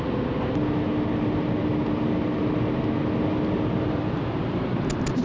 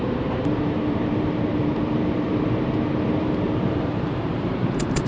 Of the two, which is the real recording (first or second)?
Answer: first